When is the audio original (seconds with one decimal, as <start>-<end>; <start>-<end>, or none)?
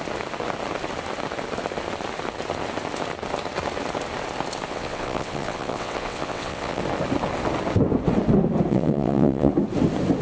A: 0.0-4.7; 6.8-8.7; 9.5-10.2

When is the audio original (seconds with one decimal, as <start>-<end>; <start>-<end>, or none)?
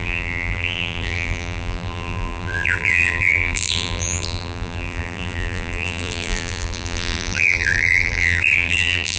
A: none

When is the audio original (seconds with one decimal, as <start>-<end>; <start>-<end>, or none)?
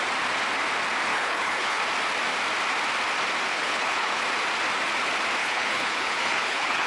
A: 0.0-1.1; 1.8-3.5; 4.2-5.4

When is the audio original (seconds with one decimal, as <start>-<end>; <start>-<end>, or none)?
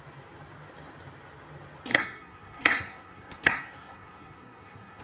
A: 0.0-1.9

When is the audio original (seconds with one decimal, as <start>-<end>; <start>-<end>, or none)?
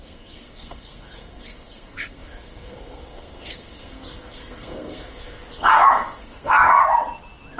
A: 6.8-7.6